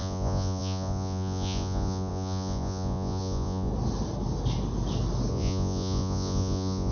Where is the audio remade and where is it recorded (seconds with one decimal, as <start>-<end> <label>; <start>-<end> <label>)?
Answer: 0.0-3.7 remade; 3.7-5.3 recorded; 5.3-6.9 remade